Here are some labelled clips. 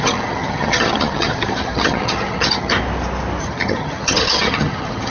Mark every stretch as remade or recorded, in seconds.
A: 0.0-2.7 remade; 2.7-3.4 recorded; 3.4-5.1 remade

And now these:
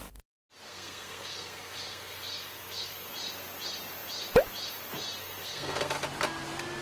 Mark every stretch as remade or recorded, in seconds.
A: 0.0-0.7 recorded; 0.7-3.1 remade; 3.1-5.2 recorded; 5.2-5.9 remade; 5.9-6.8 recorded

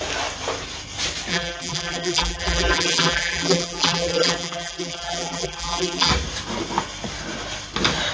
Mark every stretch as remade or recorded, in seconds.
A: 0.0-1.3 recorded; 1.3-6.1 remade; 6.1-8.1 recorded

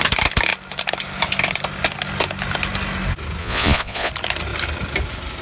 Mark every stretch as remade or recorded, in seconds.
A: 0.0-3.4 recorded; 3.4-4.1 remade; 4.1-5.4 recorded

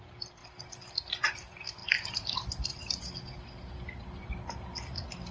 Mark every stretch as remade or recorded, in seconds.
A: 0.0-0.4 remade; 0.4-1.1 recorded; 1.1-1.8 remade; 1.8-5.3 recorded